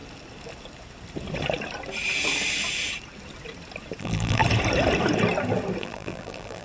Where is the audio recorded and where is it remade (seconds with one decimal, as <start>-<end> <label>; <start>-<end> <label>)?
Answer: 0.0-4.0 recorded; 4.0-4.4 remade; 4.4-5.8 recorded; 5.8-6.6 remade